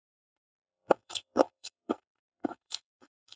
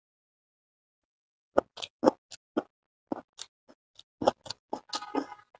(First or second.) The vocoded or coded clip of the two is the first